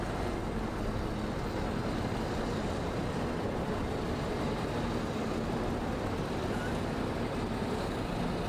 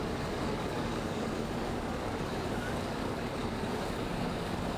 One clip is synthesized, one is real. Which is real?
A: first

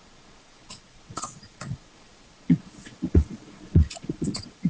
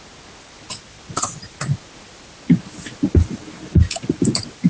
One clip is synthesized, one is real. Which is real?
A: second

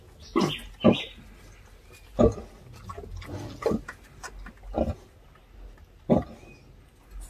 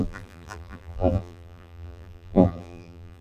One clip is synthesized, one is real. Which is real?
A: first